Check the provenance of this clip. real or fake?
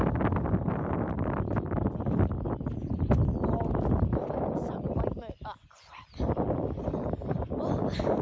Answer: real